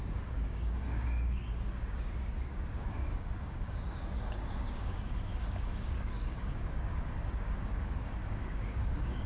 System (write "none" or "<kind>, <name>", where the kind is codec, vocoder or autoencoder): codec, DAC